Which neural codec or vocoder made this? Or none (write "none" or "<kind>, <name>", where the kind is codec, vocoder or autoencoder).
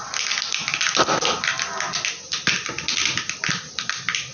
none